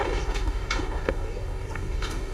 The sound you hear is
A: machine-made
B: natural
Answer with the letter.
A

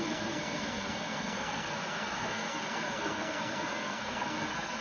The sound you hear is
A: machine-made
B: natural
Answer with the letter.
A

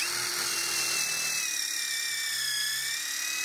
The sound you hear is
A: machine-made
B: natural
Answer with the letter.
B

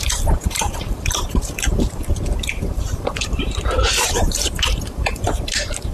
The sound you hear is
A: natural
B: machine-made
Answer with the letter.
B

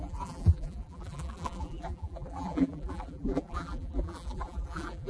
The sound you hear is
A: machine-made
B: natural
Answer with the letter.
A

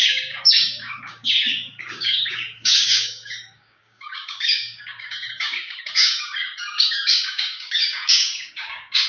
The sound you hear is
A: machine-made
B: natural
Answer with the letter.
A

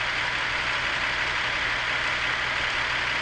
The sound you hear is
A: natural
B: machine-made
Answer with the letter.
A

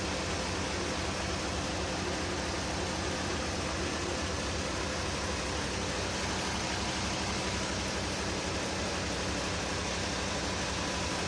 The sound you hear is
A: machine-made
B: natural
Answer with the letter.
B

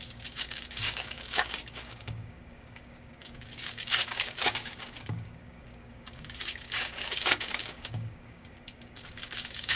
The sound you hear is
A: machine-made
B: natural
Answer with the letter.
A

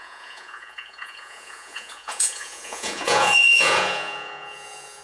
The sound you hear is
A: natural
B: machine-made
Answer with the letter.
B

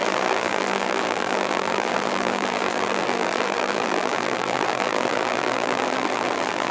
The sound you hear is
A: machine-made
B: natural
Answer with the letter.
A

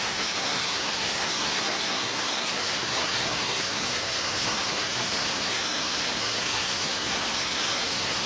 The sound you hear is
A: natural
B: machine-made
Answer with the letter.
B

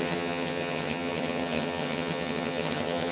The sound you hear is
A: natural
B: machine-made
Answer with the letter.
B